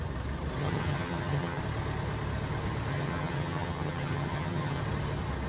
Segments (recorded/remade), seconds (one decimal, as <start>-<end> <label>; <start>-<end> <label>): 0.0-0.6 recorded; 0.6-1.6 remade; 1.6-2.9 recorded; 2.9-4.8 remade; 4.8-5.5 recorded